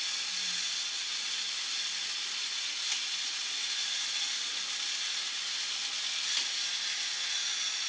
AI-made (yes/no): no